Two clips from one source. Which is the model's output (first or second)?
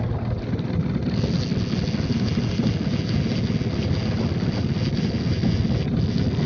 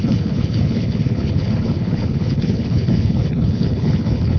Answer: second